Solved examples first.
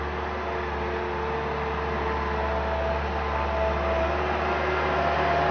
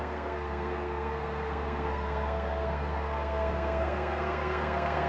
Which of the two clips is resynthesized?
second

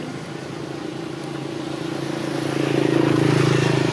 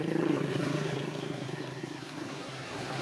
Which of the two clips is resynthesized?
second